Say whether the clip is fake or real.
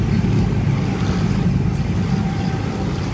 real